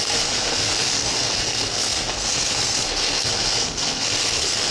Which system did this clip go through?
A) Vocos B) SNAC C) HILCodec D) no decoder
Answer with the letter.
B